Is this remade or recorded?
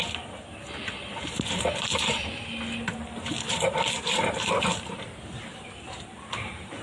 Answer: remade